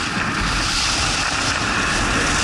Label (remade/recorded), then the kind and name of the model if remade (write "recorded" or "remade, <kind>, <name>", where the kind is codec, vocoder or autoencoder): recorded